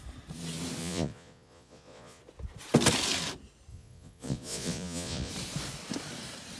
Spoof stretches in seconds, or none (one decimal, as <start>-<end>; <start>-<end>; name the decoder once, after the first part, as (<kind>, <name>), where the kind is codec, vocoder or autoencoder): 0.8-2.2 (vocoder, Vocos); 3.7-5.3